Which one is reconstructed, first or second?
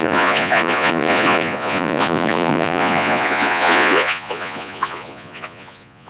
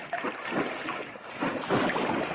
first